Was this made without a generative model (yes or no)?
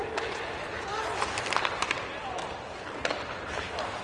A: yes